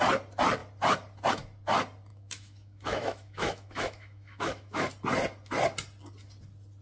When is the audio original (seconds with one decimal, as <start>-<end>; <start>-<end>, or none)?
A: 0.0-2.1; 4.9-6.8